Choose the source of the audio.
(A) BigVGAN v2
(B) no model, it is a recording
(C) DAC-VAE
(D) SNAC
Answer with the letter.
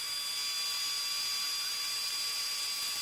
B